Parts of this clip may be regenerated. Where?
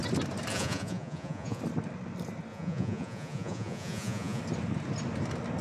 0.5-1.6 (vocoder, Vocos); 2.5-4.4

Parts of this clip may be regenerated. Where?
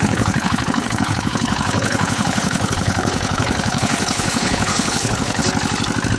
0.0-5.4 (codec, HILCodec)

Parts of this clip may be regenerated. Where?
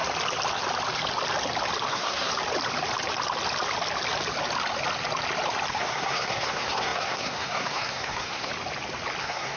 1.9-2.3 (codec, SNAC); 5.7-8.5; 9.2-9.6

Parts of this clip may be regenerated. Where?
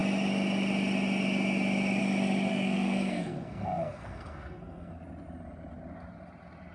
2.5-4.9 (codec, SNAC)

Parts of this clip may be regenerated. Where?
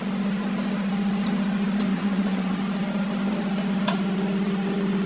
1.9-2.6 (vocoder, Vocos)